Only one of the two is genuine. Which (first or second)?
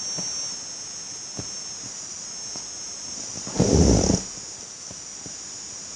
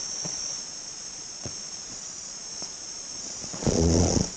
first